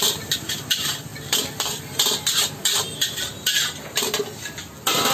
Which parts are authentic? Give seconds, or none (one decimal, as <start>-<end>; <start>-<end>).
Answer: 0.0-3.3; 4.0-5.1